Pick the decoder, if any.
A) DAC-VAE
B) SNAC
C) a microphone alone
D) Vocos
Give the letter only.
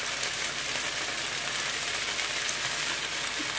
C